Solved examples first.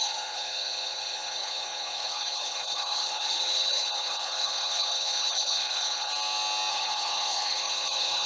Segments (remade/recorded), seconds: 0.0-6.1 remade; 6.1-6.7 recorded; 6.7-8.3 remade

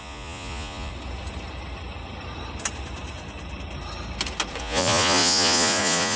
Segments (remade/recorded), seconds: 0.0-0.9 remade; 0.9-4.6 recorded; 4.6-6.2 remade